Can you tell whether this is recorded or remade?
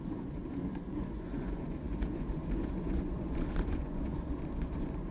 remade